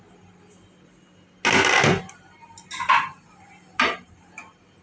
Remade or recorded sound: recorded